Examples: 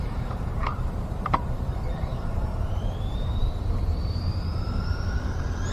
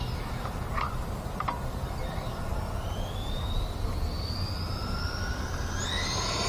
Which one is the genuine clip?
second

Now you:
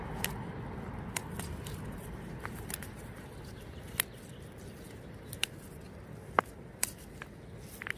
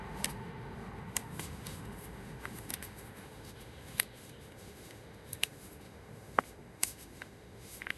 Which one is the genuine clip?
first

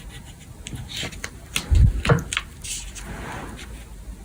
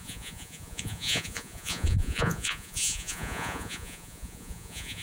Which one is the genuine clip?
first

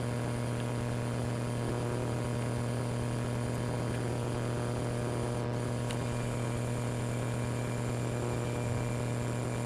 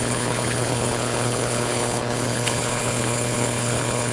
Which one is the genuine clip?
first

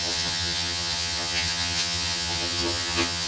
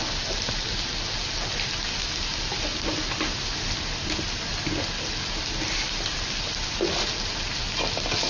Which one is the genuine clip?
second